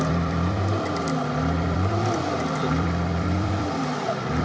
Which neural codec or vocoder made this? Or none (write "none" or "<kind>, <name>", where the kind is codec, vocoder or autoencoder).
vocoder, BigVGAN v2